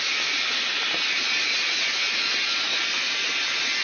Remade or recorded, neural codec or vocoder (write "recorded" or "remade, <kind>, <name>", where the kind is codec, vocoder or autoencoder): recorded